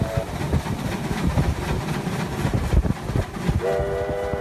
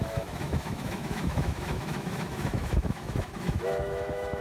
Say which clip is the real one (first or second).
first